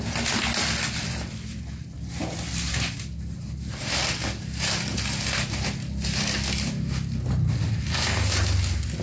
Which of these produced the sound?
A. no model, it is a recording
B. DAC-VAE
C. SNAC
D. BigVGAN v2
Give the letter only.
A